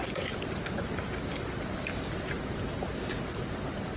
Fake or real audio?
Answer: real